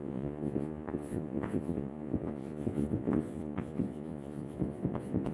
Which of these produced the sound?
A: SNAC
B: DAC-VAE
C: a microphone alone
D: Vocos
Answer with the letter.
D